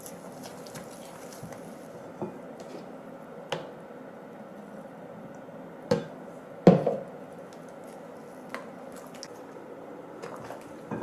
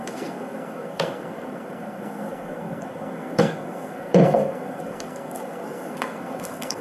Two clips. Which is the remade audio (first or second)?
second